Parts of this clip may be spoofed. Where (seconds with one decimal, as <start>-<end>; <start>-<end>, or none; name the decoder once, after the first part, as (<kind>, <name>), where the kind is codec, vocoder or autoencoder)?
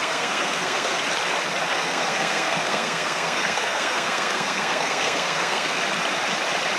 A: 0.0-1.0 (codec, SNAC); 1.7-5.8